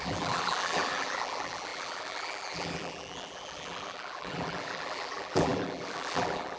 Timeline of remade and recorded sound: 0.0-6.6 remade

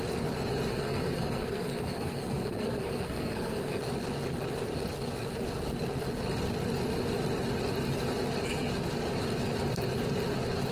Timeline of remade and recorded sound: 0.0-0.7 recorded; 0.7-3.8 remade; 3.8-10.7 recorded

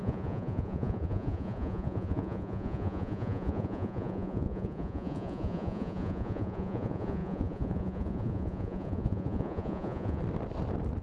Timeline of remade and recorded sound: 0.0-10.2 remade; 10.2-11.0 recorded

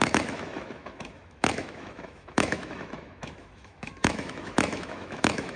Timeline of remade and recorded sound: 0.0-5.6 remade

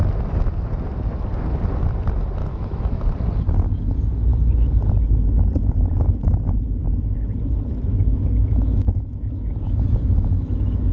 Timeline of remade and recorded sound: 0.0-2.4 recorded; 2.4-3.0 remade; 3.0-7.9 recorded; 7.9-10.9 remade

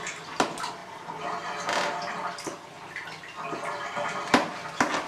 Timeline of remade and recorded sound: 0.0-5.1 recorded

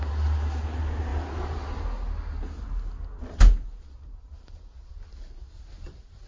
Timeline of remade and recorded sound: 0.0-6.3 recorded